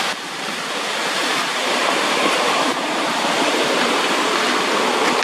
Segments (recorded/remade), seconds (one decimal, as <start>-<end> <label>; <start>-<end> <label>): 0.0-1.2 recorded; 1.2-4.3 remade; 4.3-5.2 recorded